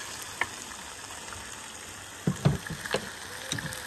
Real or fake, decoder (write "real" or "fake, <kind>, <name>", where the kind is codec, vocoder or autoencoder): real